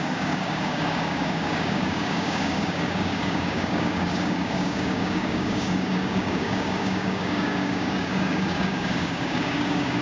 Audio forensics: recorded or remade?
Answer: remade